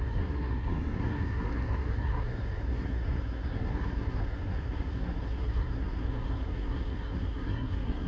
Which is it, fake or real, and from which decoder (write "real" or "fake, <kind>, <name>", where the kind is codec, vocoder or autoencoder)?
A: fake, codec, SNAC